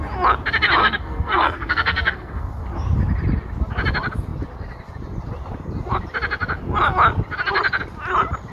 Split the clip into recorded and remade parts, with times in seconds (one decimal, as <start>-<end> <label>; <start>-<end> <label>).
0.0-0.8 recorded; 0.8-2.6 remade; 2.6-8.5 recorded